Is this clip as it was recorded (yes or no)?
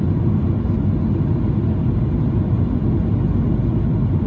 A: yes